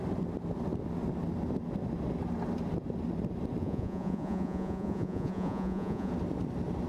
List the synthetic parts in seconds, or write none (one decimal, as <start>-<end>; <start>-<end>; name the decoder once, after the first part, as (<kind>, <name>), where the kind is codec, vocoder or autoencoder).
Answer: 3.6-6.1 (vocoder, Vocos)